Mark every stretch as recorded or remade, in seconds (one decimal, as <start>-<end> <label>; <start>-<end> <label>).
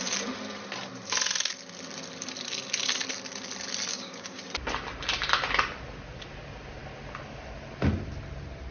0.0-3.9 recorded; 3.9-4.4 remade; 4.4-8.7 recorded